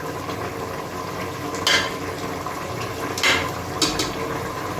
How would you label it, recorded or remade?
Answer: recorded